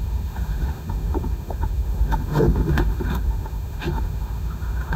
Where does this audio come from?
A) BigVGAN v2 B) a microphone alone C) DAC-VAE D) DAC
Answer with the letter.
C